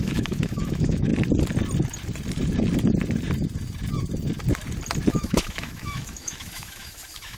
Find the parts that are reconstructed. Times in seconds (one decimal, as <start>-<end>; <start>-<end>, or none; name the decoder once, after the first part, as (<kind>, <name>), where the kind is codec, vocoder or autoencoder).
0.0-1.1 (autoencoder, DAC-VAE); 5.1-7.4